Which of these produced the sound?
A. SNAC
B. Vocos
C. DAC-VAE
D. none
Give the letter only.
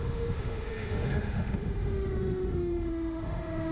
C